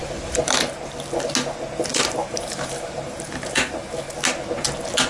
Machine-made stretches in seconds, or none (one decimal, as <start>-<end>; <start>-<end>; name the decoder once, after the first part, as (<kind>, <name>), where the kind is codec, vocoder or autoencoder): 0.0-0.7 (vocoder, BigVGAN v2); 1.9-3.9